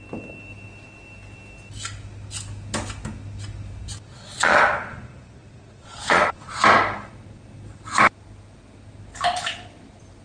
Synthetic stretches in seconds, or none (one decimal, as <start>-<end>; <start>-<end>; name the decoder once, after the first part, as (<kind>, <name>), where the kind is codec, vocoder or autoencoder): 4.1-6.6 (vocoder, Vocos)